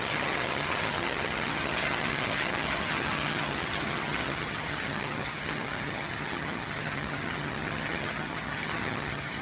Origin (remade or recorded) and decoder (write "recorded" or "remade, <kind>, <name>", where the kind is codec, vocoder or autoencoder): remade, vocoder, HiFi-GAN